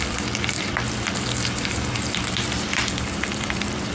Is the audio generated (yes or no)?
yes